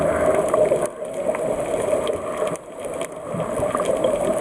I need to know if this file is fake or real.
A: real